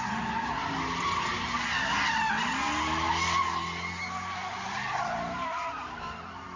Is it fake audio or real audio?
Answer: real